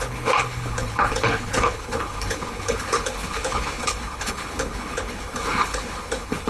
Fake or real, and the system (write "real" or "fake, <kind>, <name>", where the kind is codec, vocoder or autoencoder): fake, codec, HILCodec